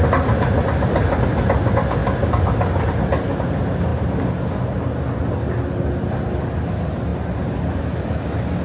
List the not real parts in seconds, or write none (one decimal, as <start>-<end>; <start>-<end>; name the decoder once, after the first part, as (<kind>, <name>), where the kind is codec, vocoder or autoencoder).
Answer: none